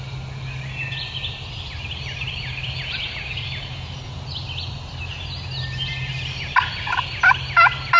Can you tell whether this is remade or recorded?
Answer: recorded